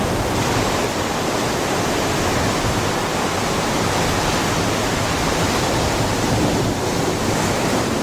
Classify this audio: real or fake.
real